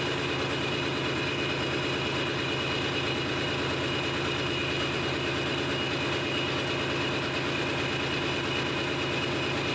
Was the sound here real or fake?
real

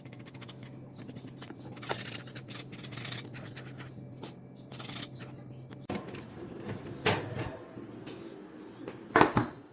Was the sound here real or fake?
real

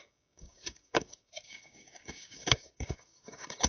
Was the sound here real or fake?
fake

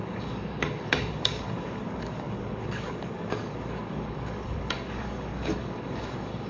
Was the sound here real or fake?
fake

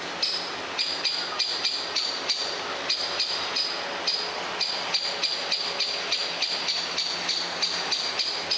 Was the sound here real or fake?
real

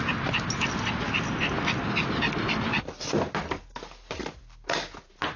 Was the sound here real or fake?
real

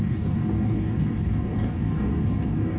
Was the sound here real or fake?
fake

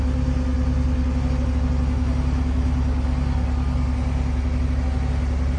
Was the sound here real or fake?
real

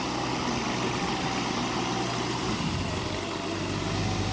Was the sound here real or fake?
real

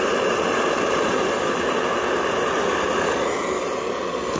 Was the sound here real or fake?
real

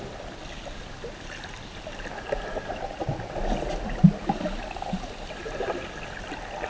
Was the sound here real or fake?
real